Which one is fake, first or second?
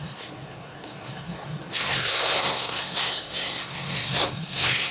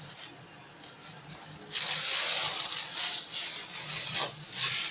first